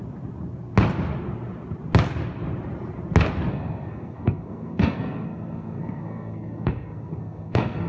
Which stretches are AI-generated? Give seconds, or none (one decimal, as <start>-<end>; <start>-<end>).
3.5-7.9